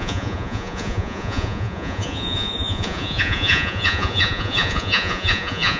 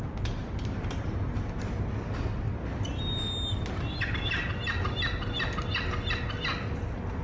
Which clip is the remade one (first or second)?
first